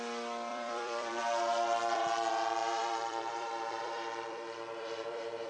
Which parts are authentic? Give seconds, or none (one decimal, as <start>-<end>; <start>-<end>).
0.0-0.5; 1.2-2.6